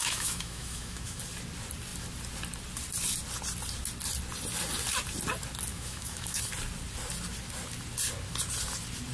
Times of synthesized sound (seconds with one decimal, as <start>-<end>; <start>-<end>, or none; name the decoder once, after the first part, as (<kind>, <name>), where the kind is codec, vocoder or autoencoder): 0.0-1.2 (autoencoder, DAC-VAE); 5.7-6.4